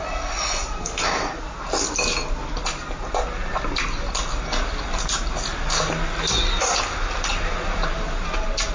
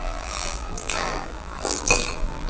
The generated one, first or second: second